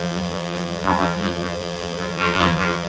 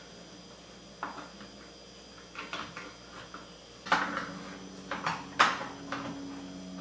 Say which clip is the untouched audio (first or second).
second